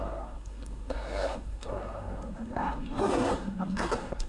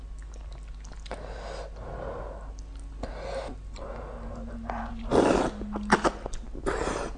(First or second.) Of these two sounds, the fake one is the first